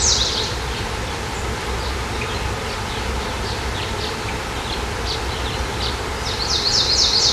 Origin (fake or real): fake